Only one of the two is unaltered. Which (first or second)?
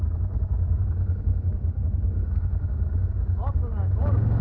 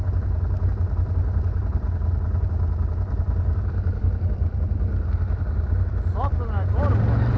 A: second